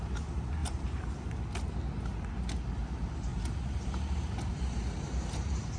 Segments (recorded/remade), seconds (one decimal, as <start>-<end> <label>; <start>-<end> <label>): 0.0-0.6 recorded; 0.6-1.1 remade; 1.1-3.3 recorded; 3.3-3.9 remade; 3.9-4.5 recorded; 4.5-5.8 remade